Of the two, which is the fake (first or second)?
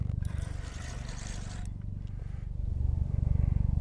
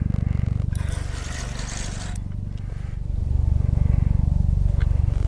first